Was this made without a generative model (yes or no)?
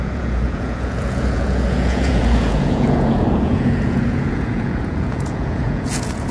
no